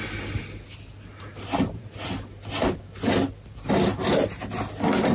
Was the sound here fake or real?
real